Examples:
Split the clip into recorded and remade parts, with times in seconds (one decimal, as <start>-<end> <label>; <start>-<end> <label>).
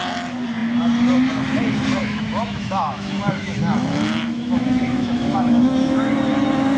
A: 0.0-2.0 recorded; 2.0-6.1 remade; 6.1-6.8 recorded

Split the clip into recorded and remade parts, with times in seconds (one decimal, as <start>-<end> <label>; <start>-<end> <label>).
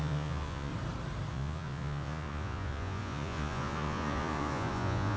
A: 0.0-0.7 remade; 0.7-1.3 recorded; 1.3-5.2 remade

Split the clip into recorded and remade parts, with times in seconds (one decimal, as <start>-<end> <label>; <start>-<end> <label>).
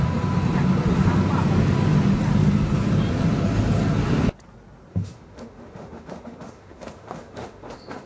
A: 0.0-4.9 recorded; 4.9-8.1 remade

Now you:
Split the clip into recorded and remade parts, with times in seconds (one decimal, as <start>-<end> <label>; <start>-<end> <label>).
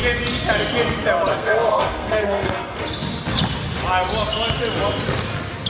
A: 0.0-1.3 recorded; 1.3-2.8 remade; 2.8-5.7 recorded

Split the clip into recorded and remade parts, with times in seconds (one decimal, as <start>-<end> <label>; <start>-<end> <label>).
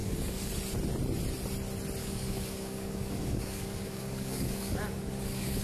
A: 0.0-0.5 remade; 0.5-2.0 recorded; 2.0-5.6 remade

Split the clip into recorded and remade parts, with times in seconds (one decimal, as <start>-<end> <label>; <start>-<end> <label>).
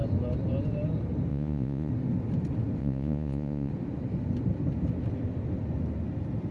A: 0.0-1.3 recorded; 1.3-1.9 remade; 1.9-2.8 recorded; 2.8-3.7 remade; 3.7-6.5 recorded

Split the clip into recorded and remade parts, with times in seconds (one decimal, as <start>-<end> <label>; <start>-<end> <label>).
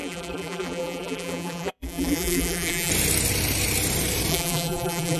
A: 0.0-2.9 remade; 2.9-4.3 recorded; 4.3-5.2 remade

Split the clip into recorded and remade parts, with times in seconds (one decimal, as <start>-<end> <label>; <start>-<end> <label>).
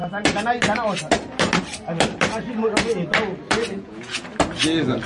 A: 0.0-3.7 recorded; 3.7-4.2 remade; 4.2-5.1 recorded